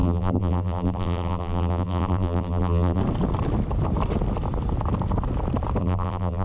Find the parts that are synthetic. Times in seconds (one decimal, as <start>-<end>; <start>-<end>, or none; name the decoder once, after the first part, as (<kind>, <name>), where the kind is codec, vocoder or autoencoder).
0.0-3.0 (vocoder, BigVGAN v2); 5.8-6.4